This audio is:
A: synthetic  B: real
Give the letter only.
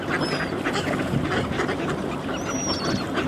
B